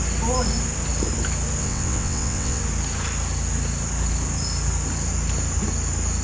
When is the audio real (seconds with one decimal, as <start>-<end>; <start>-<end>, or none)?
0.0-1.6; 2.6-6.2